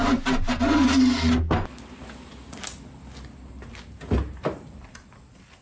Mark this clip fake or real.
real